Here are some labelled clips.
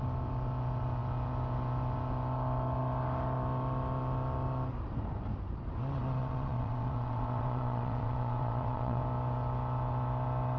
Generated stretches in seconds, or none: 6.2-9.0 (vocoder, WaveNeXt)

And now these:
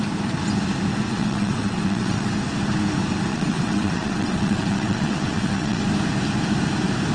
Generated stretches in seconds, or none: 1.0-2.3 (vocoder, WaveNeXt); 3.3-5.8

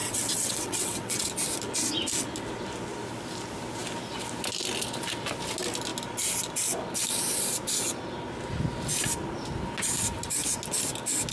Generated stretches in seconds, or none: 0.0-1.3 (vocoder, WaveNeXt)

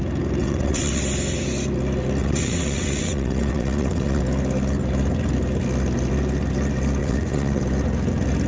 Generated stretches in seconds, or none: 0.4-1.0 (vocoder, WaveNeXt); 2.2-4.2; 7.0-7.6

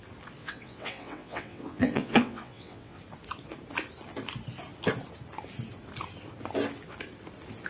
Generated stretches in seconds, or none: 0.4-3.0 (vocoder, WaveNeXt)